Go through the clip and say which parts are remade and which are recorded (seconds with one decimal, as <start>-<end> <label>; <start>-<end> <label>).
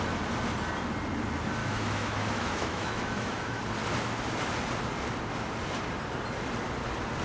0.0-1.6 recorded; 1.6-3.6 remade; 3.6-7.2 recorded